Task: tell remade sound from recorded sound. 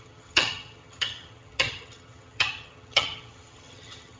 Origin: remade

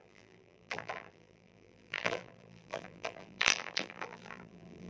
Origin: remade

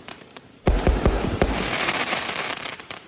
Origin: remade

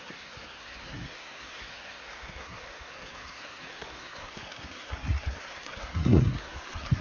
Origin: remade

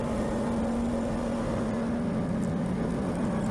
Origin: recorded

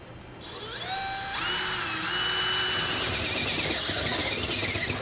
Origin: recorded